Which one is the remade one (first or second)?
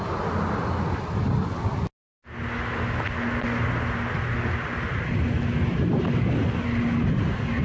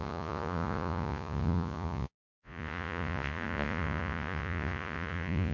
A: second